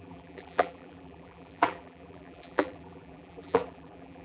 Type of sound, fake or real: fake